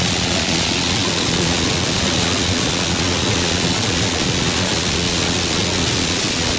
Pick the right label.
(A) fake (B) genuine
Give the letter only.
A